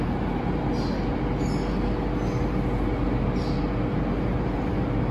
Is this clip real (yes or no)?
yes